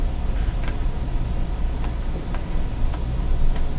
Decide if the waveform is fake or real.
real